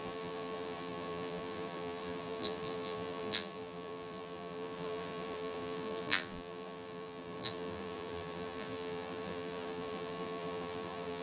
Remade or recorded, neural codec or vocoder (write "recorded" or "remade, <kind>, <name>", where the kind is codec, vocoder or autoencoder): remade, vocoder, BigVGAN v2